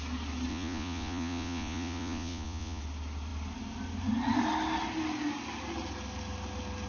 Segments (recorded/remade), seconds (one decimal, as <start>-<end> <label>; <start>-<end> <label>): 0.0-0.5 recorded; 0.5-2.8 remade; 2.8-6.9 recorded